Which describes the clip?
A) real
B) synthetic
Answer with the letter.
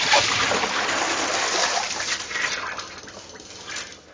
A